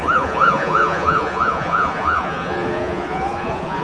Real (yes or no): no